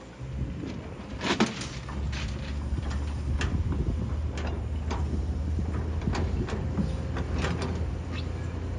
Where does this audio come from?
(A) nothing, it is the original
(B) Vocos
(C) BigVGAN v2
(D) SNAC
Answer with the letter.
A